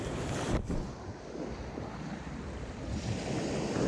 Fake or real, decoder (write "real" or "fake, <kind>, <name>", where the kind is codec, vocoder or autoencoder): real